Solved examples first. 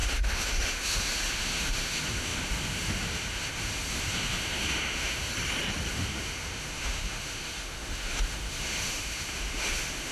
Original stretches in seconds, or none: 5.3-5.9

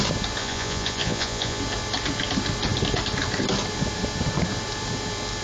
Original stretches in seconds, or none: 0.0-0.4; 1.6-5.4

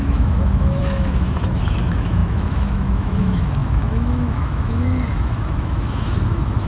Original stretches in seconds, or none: none